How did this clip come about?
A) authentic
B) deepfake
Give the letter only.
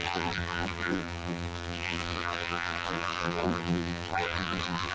B